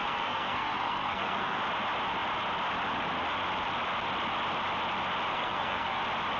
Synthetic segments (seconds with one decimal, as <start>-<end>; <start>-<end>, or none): 0.0-1.6; 5.3-6.0